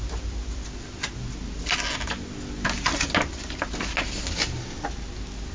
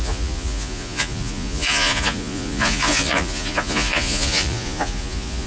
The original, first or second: first